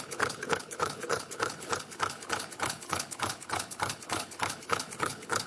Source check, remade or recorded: remade